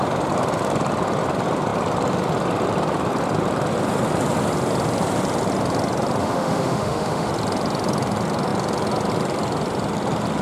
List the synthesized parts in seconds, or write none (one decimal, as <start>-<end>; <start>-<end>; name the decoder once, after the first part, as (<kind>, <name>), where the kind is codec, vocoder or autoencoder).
6.2-7.3 (autoencoder, DAC-VAE)